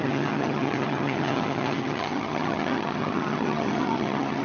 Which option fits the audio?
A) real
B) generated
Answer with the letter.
B